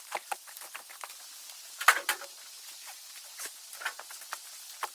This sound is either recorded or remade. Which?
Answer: recorded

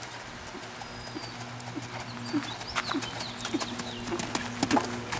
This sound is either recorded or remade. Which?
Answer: recorded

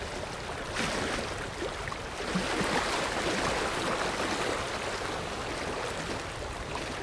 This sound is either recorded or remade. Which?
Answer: recorded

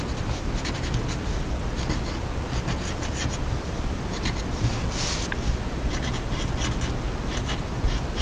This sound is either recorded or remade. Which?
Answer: recorded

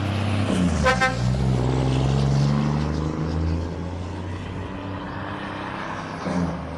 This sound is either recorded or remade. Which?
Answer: recorded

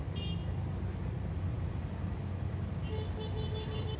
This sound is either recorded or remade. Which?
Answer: recorded